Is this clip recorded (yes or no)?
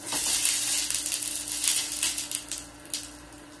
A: yes